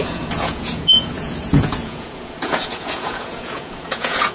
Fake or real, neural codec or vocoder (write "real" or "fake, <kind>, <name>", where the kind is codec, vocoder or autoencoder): fake, vocoder, Vocos